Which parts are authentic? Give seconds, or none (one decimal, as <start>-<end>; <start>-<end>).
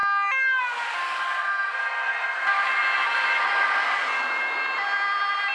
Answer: 0.0-5.5